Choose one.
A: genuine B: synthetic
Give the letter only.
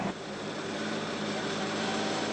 B